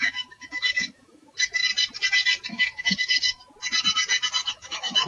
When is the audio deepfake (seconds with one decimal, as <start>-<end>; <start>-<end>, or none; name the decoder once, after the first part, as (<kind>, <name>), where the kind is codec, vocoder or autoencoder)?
0.0-1.6 (autoencoder, DAC-VAE); 2.5-3.4; 4.5-5.1